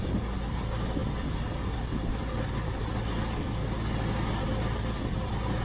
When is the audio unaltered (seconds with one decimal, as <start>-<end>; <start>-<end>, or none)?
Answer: 0.0-5.6